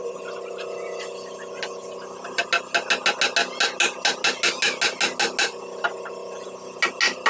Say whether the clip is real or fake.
real